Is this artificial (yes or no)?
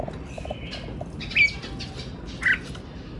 no